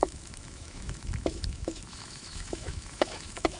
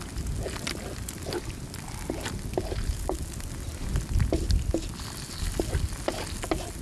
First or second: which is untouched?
second